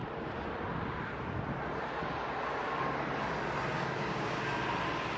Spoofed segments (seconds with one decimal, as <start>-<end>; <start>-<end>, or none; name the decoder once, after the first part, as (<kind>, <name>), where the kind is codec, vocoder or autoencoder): 3.7-4.5 (codec, DAC)